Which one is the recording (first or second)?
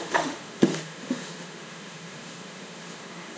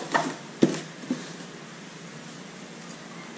second